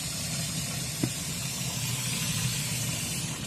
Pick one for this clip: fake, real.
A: fake